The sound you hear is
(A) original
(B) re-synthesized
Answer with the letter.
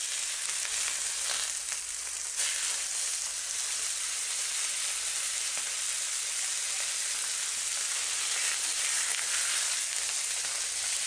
A